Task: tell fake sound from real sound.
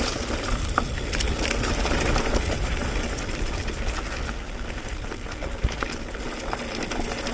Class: real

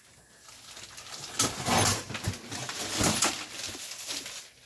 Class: real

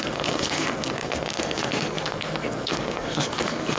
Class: fake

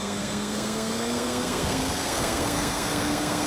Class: fake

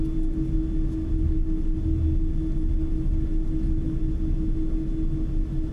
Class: real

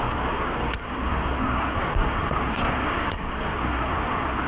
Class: fake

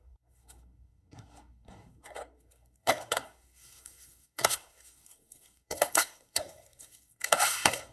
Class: fake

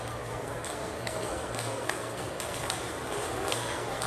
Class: fake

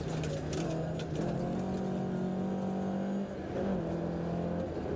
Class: real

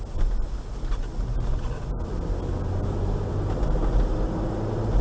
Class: real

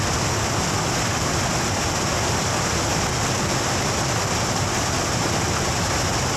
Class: real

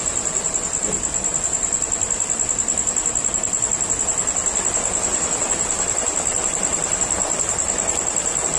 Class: real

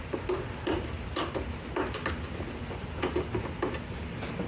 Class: real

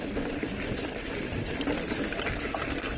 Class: real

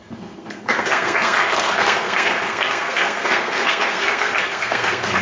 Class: fake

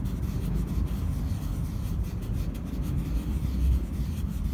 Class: real